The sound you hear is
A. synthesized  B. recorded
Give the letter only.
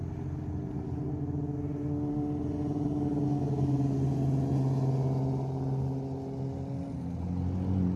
B